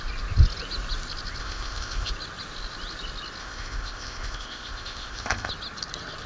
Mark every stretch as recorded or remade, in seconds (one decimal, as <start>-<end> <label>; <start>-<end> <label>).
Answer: 0.0-1.4 recorded; 1.4-2.1 remade; 2.1-3.4 recorded; 3.4-5.5 remade; 5.5-6.3 recorded